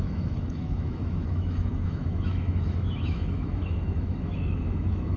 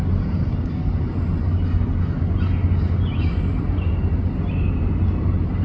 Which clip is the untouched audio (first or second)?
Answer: second